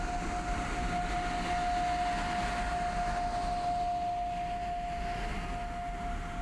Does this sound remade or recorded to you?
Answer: recorded